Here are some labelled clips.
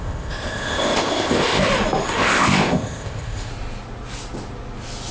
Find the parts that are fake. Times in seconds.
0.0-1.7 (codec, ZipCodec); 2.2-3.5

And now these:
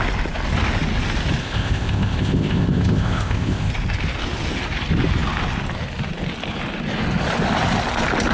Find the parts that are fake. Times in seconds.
1.4-3.7 (codec, ZipCodec)

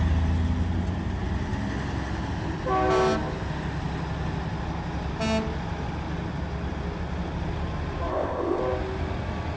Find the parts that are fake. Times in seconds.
8.1-8.6 (codec, ZipCodec)

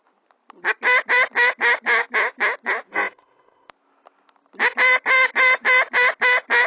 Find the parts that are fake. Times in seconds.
2.9-3.7 (codec, ZipCodec)

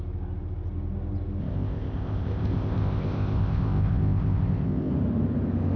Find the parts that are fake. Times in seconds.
1.4-4.9 (codec, ZipCodec)

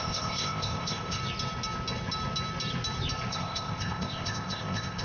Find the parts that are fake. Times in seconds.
0.0-1.2 (codec, ZipCodec); 3.3-5.0

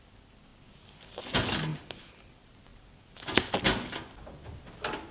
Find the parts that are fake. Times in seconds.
none